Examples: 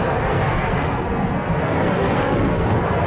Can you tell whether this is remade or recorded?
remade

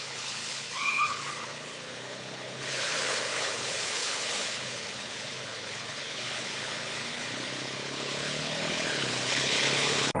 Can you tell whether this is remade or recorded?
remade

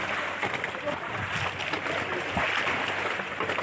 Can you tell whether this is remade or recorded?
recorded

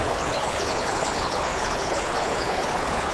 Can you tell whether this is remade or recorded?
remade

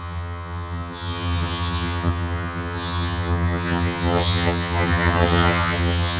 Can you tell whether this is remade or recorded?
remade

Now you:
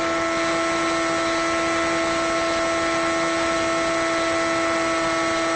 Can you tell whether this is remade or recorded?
recorded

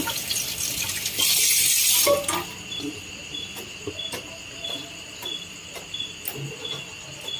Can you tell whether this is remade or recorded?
recorded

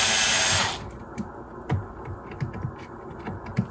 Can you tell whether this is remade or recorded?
recorded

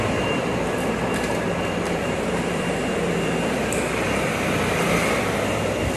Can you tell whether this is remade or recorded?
remade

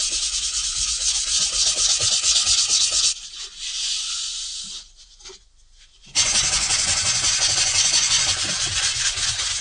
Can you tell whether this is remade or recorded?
remade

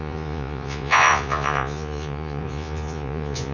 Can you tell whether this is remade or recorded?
remade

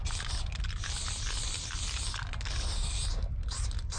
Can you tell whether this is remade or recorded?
recorded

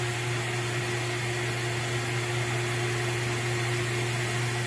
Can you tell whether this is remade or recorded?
recorded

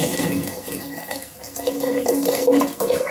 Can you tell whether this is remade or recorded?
remade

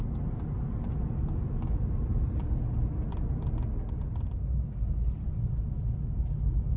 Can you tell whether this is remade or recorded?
recorded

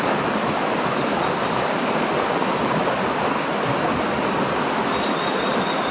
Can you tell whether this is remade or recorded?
recorded